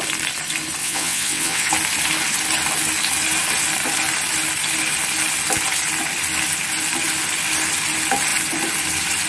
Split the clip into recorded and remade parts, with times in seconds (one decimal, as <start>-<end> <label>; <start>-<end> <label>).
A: 0.0-0.8 recorded; 0.8-1.7 remade; 1.7-9.3 recorded